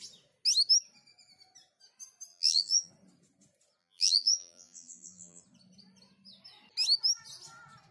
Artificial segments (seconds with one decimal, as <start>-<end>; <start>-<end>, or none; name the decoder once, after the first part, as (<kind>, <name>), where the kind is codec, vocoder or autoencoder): 2.3-2.9 (vocoder, BigVGAN v2); 3.8-5.4